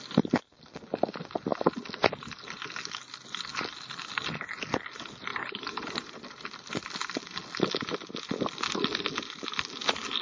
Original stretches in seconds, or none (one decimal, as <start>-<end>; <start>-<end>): 0.0-5.3; 6.1-10.2